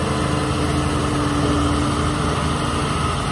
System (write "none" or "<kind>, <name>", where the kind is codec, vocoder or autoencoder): none